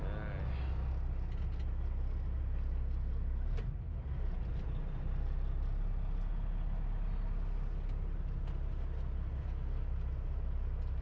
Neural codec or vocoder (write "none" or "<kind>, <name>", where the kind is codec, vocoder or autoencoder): none